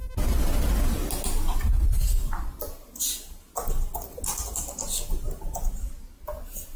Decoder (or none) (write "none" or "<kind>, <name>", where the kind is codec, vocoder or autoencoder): none